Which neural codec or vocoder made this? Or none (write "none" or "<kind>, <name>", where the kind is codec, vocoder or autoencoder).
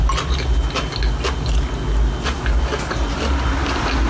none